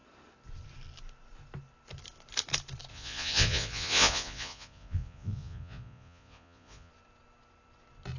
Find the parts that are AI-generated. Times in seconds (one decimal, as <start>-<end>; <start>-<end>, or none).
2.9-6.9